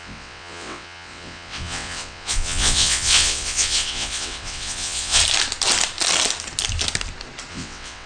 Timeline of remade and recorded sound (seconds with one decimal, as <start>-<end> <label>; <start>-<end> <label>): 0.0-5.2 remade; 5.2-7.5 recorded; 7.5-8.1 remade